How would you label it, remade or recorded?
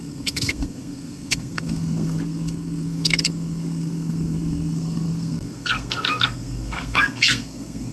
remade